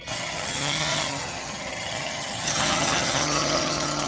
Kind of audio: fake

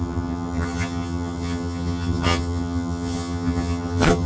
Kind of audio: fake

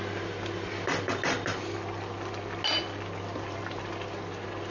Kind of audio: real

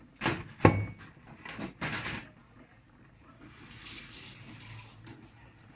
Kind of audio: real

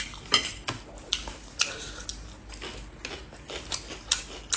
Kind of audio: real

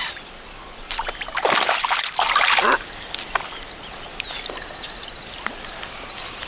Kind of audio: real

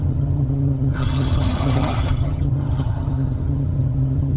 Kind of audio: fake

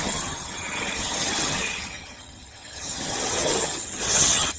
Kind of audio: fake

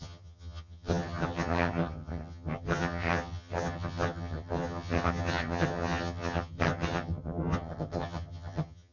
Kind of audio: fake